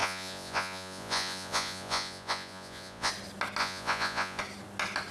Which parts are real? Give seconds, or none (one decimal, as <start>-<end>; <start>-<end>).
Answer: 3.1-3.6; 4.4-5.1